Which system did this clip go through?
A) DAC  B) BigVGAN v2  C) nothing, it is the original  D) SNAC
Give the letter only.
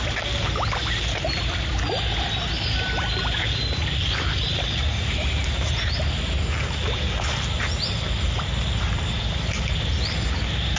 C